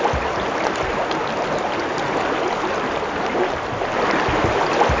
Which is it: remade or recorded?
recorded